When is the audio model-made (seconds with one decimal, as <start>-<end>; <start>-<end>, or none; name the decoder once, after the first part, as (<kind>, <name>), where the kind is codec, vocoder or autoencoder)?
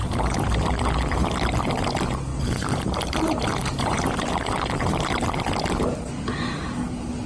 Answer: 0.0-1.0 (vocoder, BigVGAN v2)